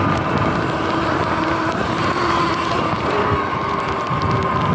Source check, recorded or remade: recorded